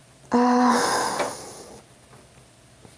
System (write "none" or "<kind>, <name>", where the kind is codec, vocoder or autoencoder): none